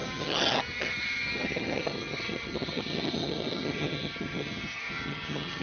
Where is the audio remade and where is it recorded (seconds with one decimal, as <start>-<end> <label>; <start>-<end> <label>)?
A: 0.0-5.6 remade